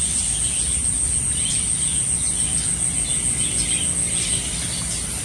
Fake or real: real